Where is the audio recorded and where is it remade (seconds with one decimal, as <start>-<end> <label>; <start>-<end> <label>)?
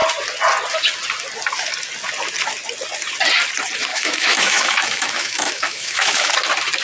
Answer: 0.0-3.9 recorded; 3.9-6.3 remade; 6.3-6.8 recorded